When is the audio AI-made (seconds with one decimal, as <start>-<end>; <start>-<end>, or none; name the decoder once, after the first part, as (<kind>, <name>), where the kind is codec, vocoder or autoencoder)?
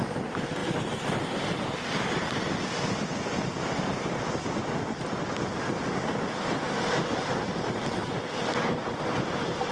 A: none